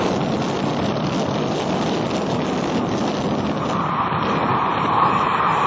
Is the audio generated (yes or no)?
no